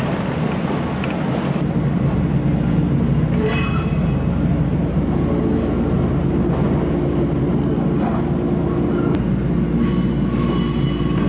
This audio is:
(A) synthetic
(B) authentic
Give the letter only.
B